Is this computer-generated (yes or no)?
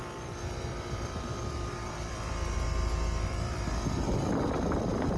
yes